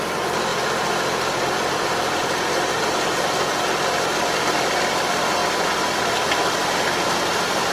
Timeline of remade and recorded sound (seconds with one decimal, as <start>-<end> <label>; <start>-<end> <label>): 0.0-7.7 recorded